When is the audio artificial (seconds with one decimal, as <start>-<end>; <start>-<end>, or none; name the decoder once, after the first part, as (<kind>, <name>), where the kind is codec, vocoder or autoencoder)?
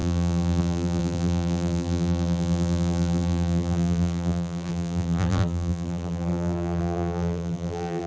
0.0-8.1 (vocoder, BigVGAN v2)